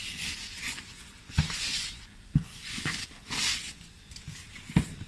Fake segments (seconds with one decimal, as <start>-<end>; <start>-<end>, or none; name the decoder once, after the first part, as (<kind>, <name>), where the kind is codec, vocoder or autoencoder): 0.0-3.1 (vocoder, Vocos); 3.5-4.1